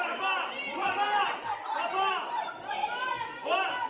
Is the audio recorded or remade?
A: recorded